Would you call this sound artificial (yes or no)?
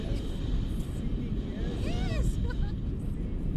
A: no